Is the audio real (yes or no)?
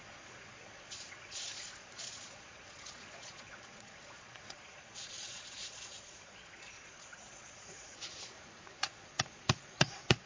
no